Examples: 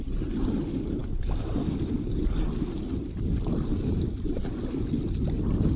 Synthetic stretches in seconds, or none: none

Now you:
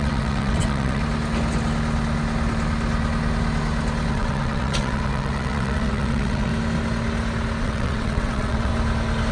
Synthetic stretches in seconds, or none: 0.0-1.0 (vocoder, WaveNeXt); 4.1-6.5; 7.6-8.7

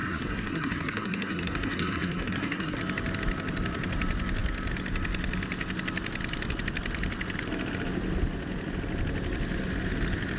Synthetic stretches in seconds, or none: 0.0-2.8 (codec, SNAC)

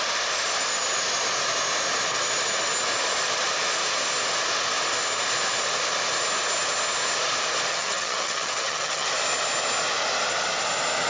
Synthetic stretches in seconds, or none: 7.7-9.1 (vocoder, HiFi-GAN)